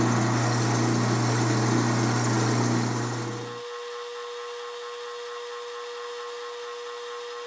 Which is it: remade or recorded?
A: recorded